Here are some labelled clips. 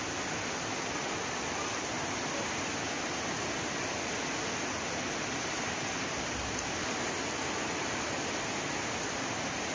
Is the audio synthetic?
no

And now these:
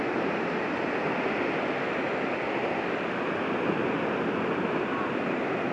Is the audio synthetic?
no